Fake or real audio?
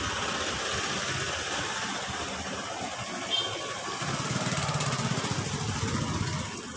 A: real